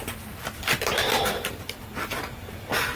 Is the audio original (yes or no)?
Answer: yes